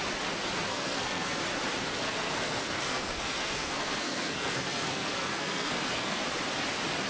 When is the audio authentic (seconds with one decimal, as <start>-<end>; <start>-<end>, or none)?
0.0-0.7; 1.4-1.9; 6.2-7.1